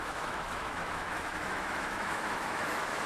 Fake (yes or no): yes